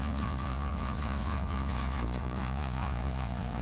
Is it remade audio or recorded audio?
remade